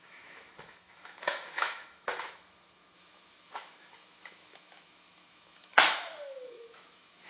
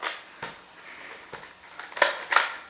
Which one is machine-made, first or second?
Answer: first